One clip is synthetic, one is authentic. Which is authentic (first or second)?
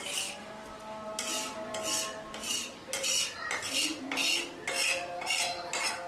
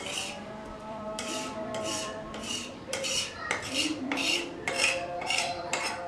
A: first